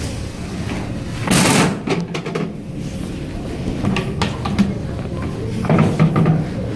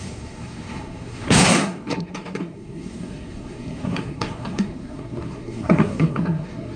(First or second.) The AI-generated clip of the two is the second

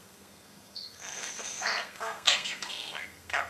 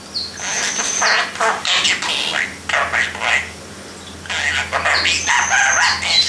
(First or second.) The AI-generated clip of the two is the first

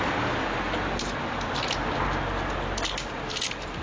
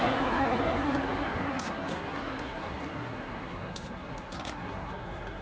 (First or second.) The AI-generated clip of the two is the second